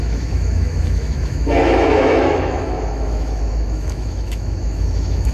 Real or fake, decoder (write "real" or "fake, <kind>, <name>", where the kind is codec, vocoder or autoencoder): fake, autoencoder, DAC-VAE